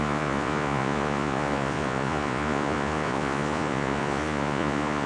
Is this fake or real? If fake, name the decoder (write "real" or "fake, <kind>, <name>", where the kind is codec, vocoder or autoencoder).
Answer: fake, vocoder, Vocos